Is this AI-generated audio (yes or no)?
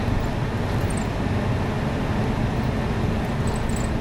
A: no